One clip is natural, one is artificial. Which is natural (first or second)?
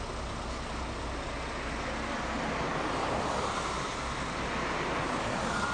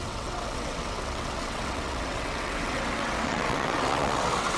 first